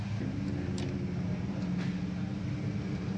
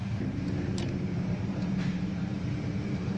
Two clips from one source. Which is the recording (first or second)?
first